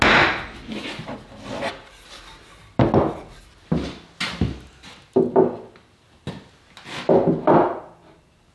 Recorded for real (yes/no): yes